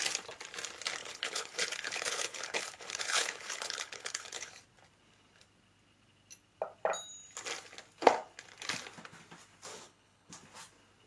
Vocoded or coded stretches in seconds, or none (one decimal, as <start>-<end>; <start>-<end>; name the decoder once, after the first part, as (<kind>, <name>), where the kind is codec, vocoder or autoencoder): 1.0-4.5 (codec, HILCodec); 9.7-10.3